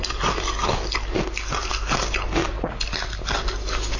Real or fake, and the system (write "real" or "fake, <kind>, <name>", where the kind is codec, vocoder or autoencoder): real